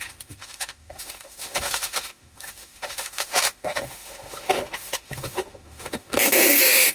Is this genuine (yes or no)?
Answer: no